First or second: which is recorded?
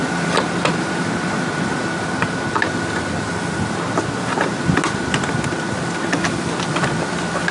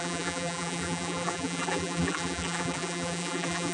first